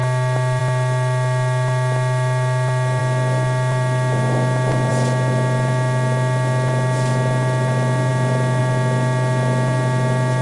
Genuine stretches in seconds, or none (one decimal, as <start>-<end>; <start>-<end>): 0.0-10.4